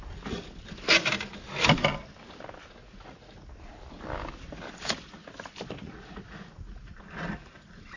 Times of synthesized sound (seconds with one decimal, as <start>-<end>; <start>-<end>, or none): 2.8-3.5; 5.8-6.8